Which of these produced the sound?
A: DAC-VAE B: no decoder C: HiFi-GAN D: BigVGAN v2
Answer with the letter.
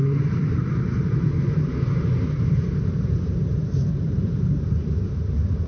D